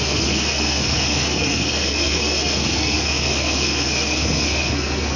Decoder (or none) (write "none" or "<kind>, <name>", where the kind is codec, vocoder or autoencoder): codec, SNAC